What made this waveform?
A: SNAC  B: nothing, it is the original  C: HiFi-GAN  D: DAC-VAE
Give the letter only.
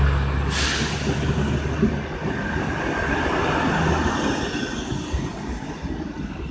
B